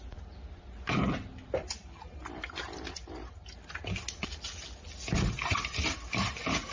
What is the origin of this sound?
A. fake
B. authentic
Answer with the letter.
B